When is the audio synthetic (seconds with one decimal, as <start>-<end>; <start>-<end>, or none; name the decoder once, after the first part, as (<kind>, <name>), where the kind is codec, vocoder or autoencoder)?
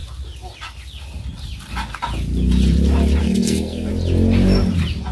3.2-3.9 (codec, SNAC)